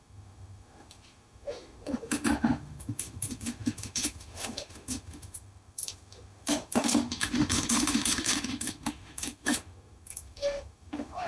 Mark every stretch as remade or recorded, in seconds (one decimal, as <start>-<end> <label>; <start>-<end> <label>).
0.0-11.3 remade